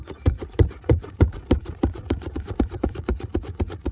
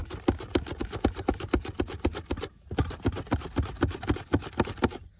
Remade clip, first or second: first